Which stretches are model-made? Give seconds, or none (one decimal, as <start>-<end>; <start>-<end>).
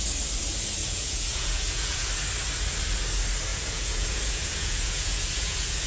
0.8-2.1; 3.5-5.9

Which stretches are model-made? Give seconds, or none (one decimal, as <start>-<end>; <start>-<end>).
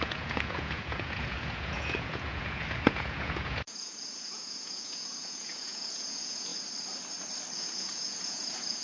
0.0-6.5; 7.6-8.8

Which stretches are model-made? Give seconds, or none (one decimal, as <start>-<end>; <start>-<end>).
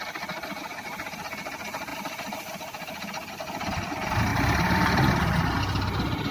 none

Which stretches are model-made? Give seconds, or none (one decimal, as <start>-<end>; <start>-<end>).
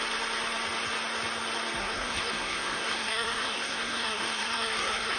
1.8-5.2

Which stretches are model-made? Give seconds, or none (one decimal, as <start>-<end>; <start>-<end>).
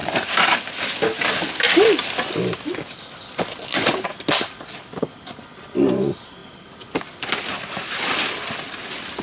none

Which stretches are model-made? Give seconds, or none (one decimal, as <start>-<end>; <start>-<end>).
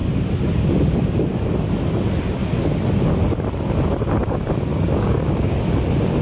4.7-5.6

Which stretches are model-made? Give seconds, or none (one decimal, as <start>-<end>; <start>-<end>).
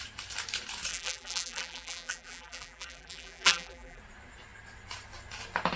0.9-4.0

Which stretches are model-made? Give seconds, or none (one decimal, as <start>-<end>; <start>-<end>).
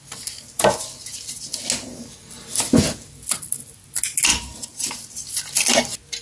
4.3-4.9